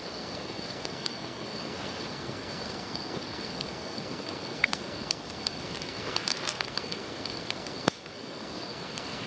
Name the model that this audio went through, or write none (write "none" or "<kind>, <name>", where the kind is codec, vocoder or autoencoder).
codec, SNAC